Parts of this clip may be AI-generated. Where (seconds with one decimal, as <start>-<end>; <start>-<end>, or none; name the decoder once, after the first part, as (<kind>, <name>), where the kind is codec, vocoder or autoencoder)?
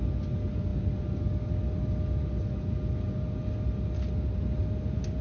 none